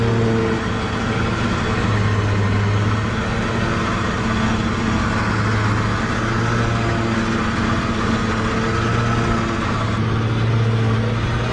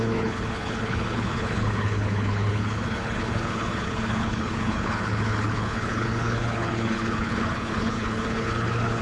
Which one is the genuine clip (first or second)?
first